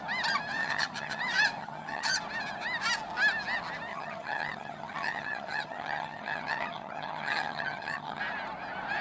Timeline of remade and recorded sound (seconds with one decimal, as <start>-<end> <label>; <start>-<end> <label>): 0.0-0.6 recorded; 0.6-1.2 remade; 1.2-1.6 recorded; 1.6-2.2 remade; 2.2-3.9 recorded; 3.9-8.2 remade; 8.2-9.0 recorded